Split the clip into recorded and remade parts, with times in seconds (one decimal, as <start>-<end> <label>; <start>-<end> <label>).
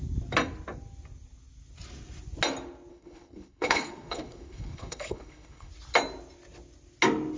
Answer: 0.0-2.9 recorded; 2.9-5.7 remade; 5.7-7.4 recorded